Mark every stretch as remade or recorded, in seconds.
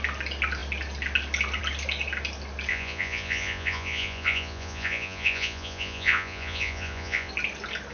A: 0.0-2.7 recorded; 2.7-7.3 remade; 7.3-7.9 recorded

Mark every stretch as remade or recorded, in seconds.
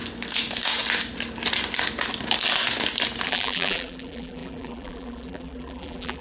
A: 0.0-3.3 recorded; 3.3-6.2 remade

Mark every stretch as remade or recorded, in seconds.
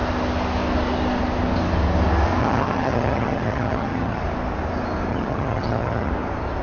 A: 0.0-2.4 recorded; 2.4-4.2 remade; 4.2-5.1 recorded; 5.1-6.1 remade; 6.1-6.6 recorded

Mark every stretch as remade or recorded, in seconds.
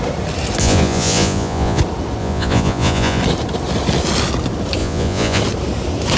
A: 0.0-0.6 recorded; 0.6-1.8 remade; 1.8-2.2 recorded; 2.2-3.2 remade; 3.2-4.8 recorded; 4.8-5.4 remade; 5.4-6.2 recorded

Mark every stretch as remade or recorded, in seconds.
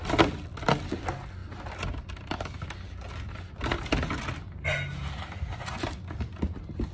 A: 0.0-6.9 recorded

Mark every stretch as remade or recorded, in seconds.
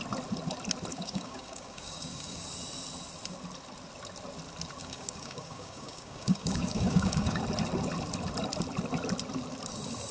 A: 0.0-0.9 recorded; 0.9-2.5 remade; 2.5-4.8 recorded; 4.8-7.4 remade; 7.4-10.1 recorded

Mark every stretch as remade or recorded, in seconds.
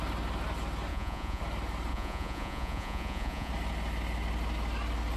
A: 0.0-0.9 recorded; 0.9-1.4 remade; 1.4-1.9 recorded; 1.9-3.5 remade; 3.5-5.2 recorded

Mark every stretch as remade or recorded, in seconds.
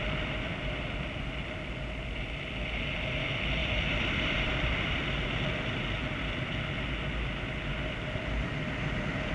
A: 0.0-3.6 recorded; 3.6-5.1 remade; 5.1-9.3 recorded